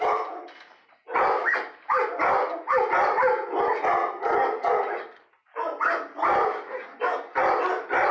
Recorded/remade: recorded